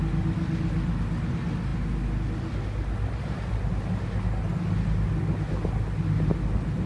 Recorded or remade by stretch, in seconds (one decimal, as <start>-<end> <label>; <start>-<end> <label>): 0.0-6.9 recorded

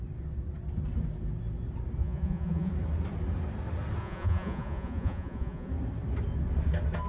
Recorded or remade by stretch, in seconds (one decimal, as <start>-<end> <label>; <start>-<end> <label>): 0.0-2.0 recorded; 2.0-2.7 remade; 2.7-4.0 recorded; 4.0-5.7 remade; 5.7-7.1 recorded

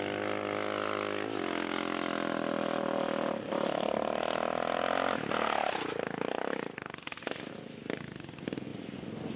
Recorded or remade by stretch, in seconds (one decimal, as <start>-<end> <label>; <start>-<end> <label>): 0.0-8.7 recorded; 8.7-9.4 remade

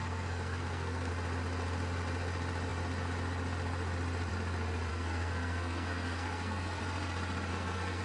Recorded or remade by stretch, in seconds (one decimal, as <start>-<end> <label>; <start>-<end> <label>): 0.0-1.1 remade; 1.1-4.9 recorded; 4.9-6.8 remade; 6.8-7.5 recorded; 7.5-8.0 remade

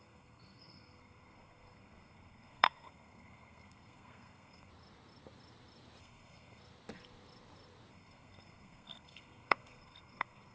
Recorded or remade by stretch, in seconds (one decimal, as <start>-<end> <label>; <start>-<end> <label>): 0.0-4.7 remade; 4.7-6.0 recorded; 6.0-6.6 remade; 6.6-7.9 recorded; 7.9-10.5 remade

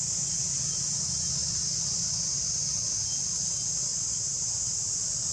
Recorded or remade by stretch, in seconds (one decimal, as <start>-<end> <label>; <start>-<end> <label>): 0.0-3.9 recorded; 3.9-4.6 remade; 4.6-5.3 recorded

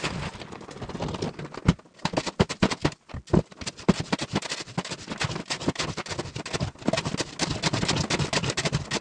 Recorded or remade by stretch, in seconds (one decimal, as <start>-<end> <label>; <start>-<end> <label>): 0.0-9.0 recorded

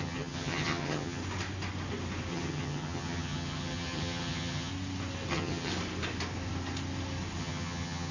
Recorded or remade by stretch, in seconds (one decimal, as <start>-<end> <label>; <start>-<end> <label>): 0.0-1.2 remade; 1.2-2.3 recorded; 2.3-4.7 remade; 4.7-5.3 recorded; 5.3-5.7 remade; 5.7-7.4 recorded; 7.4-8.1 remade